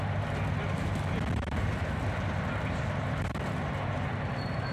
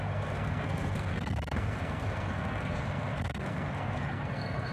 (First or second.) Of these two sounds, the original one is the first